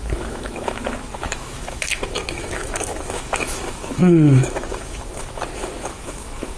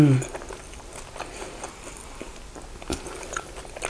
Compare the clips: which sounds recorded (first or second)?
second